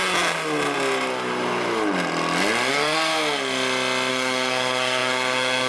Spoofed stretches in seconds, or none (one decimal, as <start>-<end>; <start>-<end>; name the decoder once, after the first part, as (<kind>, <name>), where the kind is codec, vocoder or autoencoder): 2.7-3.1 (codec, SNAC); 4.1-5.7